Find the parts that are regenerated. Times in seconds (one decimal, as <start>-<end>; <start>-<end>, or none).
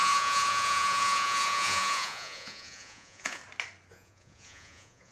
0.0-3.4; 3.9-5.1